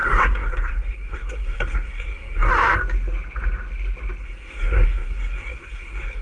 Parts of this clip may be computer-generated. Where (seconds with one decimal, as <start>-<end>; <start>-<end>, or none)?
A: 0.0-2.5; 4.2-6.2